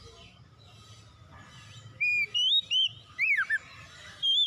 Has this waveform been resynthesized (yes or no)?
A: no